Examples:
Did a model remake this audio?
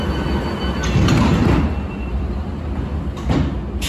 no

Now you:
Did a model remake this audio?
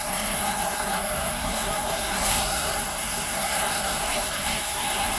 yes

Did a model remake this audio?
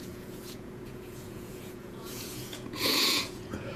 yes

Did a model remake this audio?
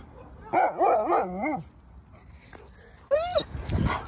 no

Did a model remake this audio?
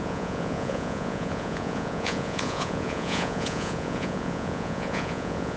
yes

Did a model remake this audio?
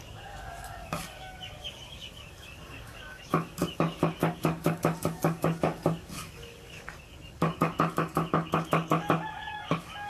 yes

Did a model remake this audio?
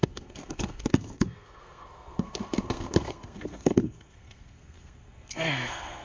yes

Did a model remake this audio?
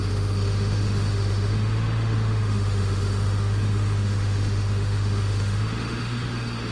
yes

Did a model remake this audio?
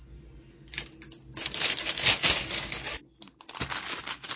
no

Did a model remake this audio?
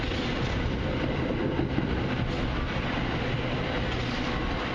no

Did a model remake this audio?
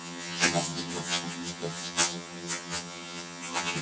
yes